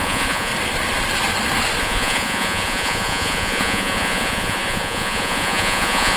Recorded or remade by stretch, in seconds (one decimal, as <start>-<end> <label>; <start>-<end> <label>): 0.0-0.5 remade; 0.5-1.8 recorded; 1.8-6.2 remade